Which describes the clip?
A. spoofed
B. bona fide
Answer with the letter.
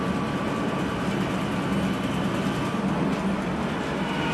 B